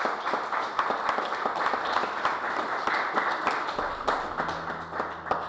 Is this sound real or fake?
real